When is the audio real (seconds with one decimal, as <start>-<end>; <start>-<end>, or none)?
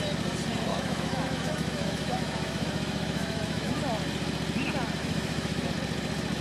0.0-0.7; 3.8-5.0; 5.7-6.4